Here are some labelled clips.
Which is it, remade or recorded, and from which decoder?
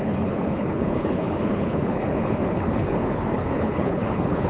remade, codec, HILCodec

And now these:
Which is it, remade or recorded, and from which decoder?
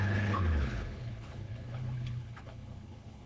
remade, codec, HILCodec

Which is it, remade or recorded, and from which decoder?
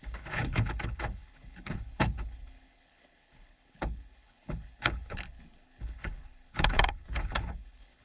remade, codec, HILCodec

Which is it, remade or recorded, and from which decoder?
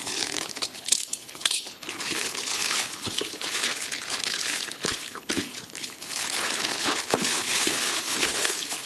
remade, codec, HILCodec